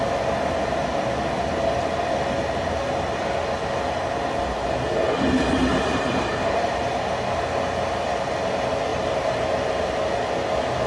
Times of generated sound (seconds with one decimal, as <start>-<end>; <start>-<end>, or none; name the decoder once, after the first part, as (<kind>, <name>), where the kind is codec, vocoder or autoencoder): 5.7-6.7 (vocoder, BigVGAN v2); 8.9-10.0